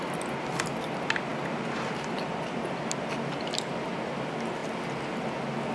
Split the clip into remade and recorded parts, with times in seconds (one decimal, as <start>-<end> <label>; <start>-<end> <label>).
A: 0.0-5.7 recorded